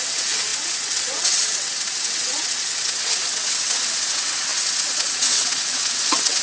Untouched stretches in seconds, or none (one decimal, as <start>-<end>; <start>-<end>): none